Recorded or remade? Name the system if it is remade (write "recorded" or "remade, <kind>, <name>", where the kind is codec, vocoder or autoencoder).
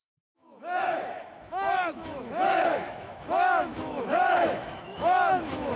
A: remade, autoencoder, DAC-VAE